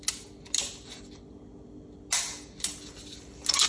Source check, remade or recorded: recorded